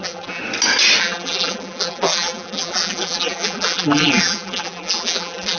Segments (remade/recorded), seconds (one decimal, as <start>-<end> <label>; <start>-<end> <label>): 0.0-0.4 remade; 0.4-1.0 recorded; 1.0-5.6 remade

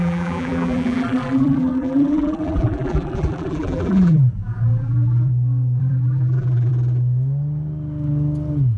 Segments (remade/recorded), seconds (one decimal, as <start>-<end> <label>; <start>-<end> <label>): 0.0-5.3 remade; 5.3-5.8 recorded; 5.8-6.7 remade; 6.7-8.8 recorded

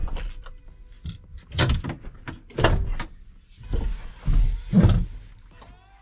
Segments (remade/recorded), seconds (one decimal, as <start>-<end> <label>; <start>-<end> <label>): 0.0-6.0 recorded

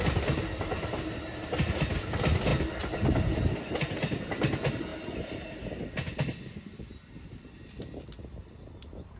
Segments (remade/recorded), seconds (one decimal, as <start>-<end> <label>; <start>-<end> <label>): 0.0-9.2 recorded